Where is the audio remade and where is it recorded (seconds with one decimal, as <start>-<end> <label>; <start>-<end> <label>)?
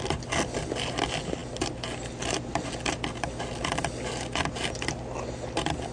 0.0-5.9 recorded